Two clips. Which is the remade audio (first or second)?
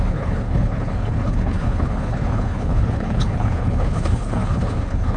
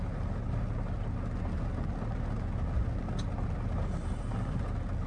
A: first